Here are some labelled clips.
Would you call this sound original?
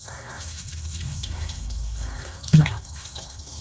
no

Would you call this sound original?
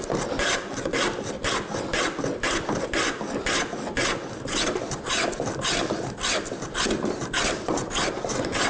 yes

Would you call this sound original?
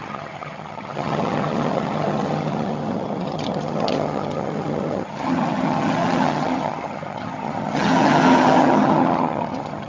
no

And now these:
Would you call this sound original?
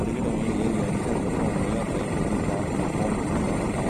yes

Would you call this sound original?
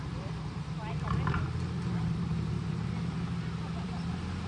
no